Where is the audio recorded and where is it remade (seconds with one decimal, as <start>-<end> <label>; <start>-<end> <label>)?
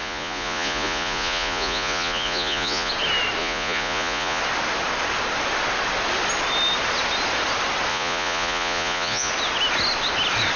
0.0-2.9 remade; 2.9-3.4 recorded; 3.4-4.4 remade; 4.4-7.9 recorded; 7.9-9.3 remade; 9.3-10.6 recorded